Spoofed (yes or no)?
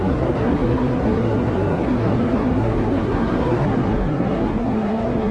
yes